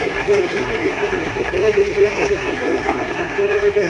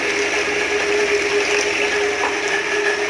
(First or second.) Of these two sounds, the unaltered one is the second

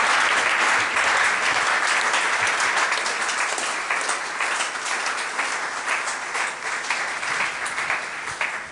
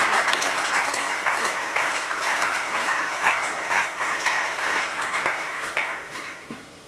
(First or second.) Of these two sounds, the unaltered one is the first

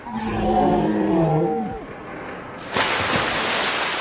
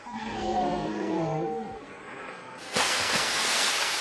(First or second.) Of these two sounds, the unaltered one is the first